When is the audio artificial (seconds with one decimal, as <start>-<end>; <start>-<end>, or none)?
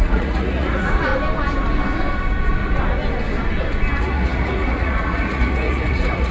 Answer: 0.0-1.1; 4.0-6.3